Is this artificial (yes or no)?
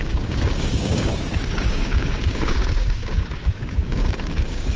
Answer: yes